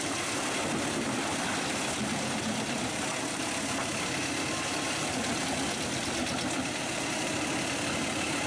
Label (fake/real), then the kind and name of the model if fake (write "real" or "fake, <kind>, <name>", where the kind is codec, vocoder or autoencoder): fake, vocoder, BigVGAN v2